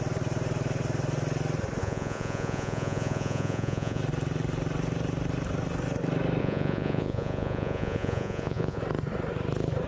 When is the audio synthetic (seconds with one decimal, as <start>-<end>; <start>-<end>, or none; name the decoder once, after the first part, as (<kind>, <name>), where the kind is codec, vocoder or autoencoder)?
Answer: 1.8-4.0 (vocoder, Vocos); 6.4-8.8